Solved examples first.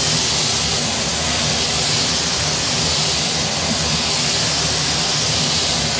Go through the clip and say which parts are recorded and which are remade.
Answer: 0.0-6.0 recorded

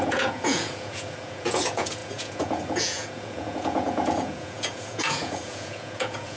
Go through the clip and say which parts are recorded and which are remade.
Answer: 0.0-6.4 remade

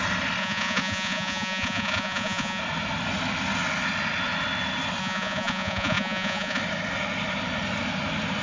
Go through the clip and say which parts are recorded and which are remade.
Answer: 0.0-0.4 recorded; 0.4-2.6 remade; 2.6-5.0 recorded; 5.0-6.6 remade; 6.6-8.4 recorded

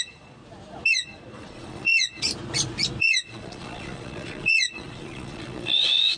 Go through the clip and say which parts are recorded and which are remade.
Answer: 0.0-0.4 remade; 0.4-0.9 recorded; 0.9-2.3 remade; 2.3-3.0 recorded; 3.0-6.2 remade

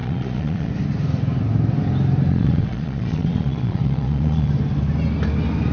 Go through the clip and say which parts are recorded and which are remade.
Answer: 0.0-0.7 remade; 0.7-2.3 recorded; 2.3-4.5 remade; 4.5-5.7 recorded

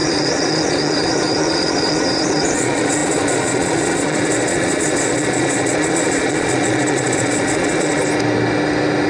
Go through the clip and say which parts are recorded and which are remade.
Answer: 0.0-8.0 remade; 8.0-9.1 recorded